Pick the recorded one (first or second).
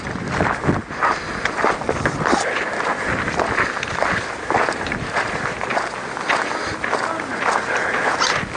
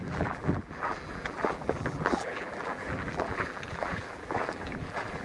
first